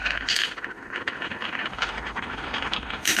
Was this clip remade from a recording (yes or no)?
yes